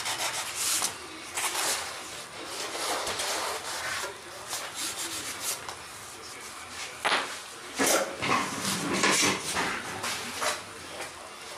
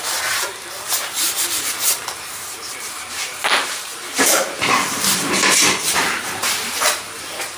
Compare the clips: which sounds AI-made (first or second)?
second